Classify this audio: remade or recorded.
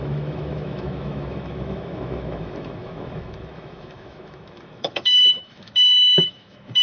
remade